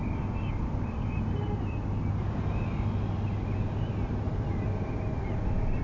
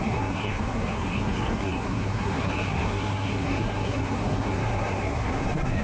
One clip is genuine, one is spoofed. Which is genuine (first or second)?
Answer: first